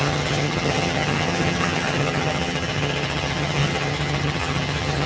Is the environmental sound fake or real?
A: fake